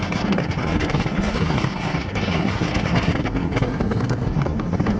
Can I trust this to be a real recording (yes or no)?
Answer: no